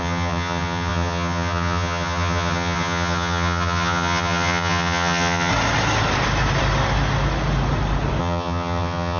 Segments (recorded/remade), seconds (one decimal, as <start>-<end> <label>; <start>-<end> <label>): 0.0-5.5 remade; 5.5-8.2 recorded; 8.2-9.2 remade